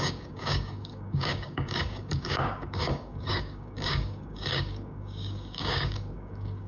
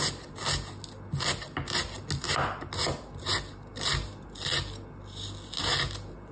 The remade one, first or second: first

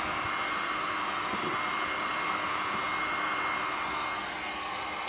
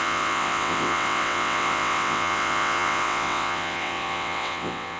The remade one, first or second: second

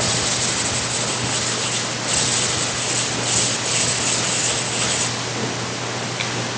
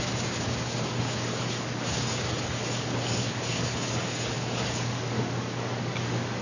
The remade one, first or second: second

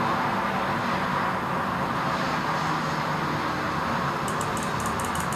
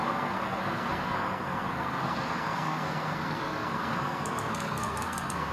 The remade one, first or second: second